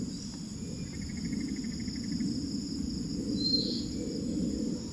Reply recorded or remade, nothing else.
recorded